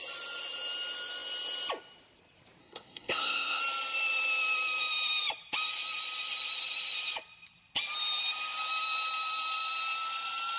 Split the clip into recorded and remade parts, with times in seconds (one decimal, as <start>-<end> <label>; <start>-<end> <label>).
0.0-2.6 recorded; 2.6-3.6 remade; 3.6-10.6 recorded